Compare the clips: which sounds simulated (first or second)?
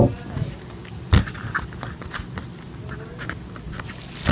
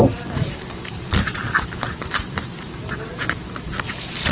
second